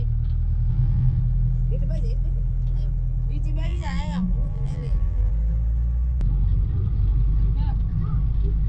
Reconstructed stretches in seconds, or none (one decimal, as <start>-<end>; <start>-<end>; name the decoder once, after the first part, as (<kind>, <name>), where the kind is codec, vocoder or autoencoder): 0.7-1.2 (vocoder, BigVGAN v2); 3.7-5.3